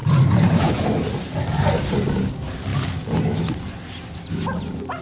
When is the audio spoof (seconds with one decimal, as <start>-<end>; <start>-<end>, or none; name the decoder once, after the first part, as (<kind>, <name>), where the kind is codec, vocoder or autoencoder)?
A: 0.0-0.7 (vocoder, BigVGAN v2)